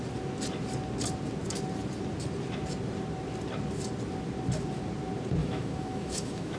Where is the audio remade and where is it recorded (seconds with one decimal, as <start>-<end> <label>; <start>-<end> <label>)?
0.0-5.4 recorded; 5.4-6.6 remade